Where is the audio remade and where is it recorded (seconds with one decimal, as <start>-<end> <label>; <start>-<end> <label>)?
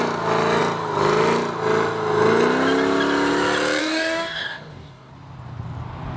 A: 0.0-3.8 recorded; 3.8-5.1 remade; 5.1-6.2 recorded